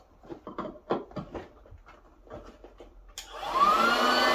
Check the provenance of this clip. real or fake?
real